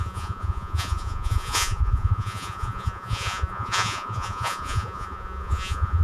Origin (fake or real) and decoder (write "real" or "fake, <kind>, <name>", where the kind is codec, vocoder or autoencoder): fake, vocoder, Vocos